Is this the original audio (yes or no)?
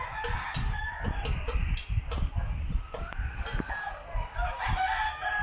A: yes